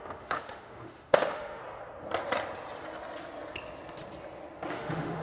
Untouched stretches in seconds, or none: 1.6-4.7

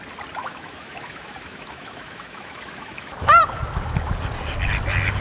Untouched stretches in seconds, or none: 0.0-0.4; 3.4-5.2

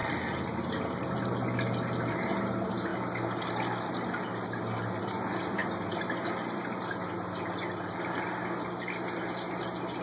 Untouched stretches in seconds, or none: 0.0-10.0

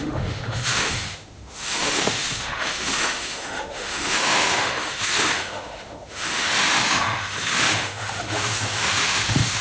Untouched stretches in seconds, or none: none

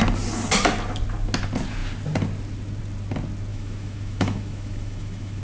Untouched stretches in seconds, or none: 0.0-3.5

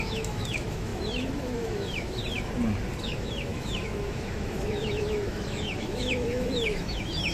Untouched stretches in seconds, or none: 2.2-3.0

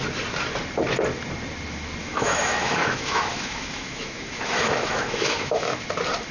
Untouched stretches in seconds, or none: 0.0-2.0; 5.8-6.3

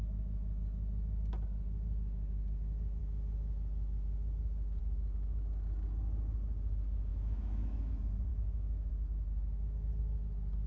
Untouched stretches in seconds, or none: 0.0-7.1; 7.9-8.3; 8.9-10.7